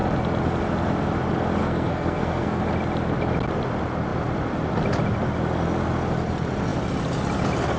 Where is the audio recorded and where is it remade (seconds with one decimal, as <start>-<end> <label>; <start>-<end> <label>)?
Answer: 0.0-1.6 recorded; 1.6-2.6 remade; 2.6-7.8 recorded